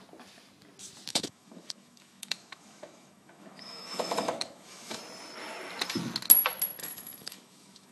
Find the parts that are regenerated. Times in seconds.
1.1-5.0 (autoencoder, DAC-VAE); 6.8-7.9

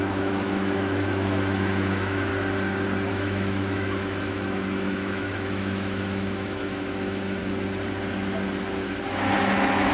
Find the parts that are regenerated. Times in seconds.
0.0-2.3 (autoencoder, DAC-VAE); 3.1-7.4; 9.4-9.9

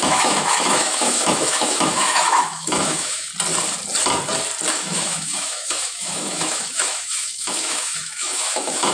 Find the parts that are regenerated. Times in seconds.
0.0-3.3 (autoencoder, DAC-VAE); 4.7-8.9

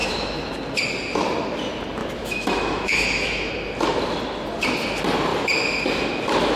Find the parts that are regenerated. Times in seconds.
0.0-0.5 (autoencoder, DAC-VAE); 2.0-3.5

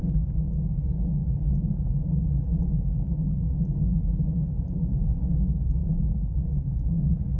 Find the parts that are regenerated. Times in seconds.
0.0-7.4 (autoencoder, DAC-VAE)

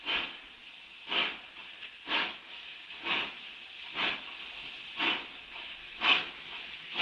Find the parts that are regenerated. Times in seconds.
2.2-2.8 (autoencoder, DAC-VAE); 5.8-7.0

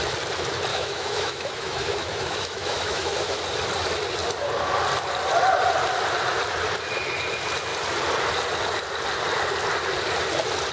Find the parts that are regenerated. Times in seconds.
0.7-3.4 (autoencoder, DAC-VAE)

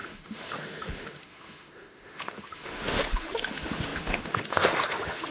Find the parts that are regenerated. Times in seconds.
0.0-5.3 (autoencoder, DAC-VAE)